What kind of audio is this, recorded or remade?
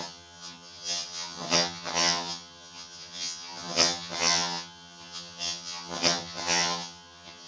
remade